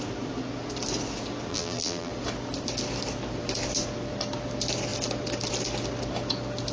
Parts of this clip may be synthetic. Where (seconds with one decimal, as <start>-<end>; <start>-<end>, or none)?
1.5-2.1